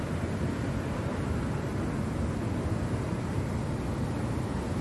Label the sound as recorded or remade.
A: recorded